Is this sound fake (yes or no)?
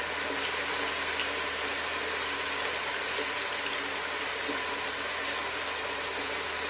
no